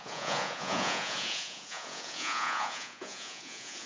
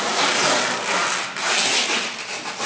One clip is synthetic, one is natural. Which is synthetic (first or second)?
first